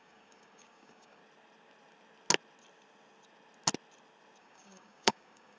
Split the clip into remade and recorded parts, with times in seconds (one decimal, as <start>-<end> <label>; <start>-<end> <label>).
0.0-1.2 remade; 1.2-4.4 recorded; 4.4-5.6 remade